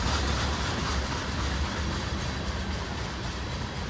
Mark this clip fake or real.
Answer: real